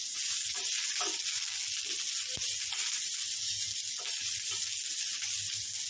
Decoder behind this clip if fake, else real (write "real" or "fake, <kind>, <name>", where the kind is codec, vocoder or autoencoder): real